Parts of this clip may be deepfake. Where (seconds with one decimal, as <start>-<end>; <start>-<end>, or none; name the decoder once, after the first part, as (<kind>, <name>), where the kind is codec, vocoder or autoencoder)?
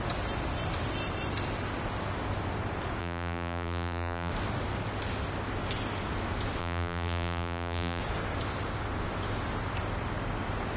3.0-4.3 (vocoder, BigVGAN v2); 6.6-8.0